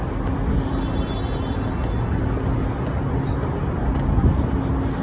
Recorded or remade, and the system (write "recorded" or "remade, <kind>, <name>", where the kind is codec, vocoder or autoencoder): recorded